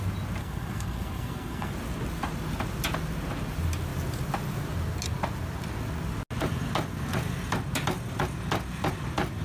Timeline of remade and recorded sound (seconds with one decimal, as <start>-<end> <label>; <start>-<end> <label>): 0.0-0.4 recorded; 0.4-1.7 remade; 1.7-9.4 recorded